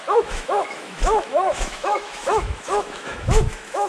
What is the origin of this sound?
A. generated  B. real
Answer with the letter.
A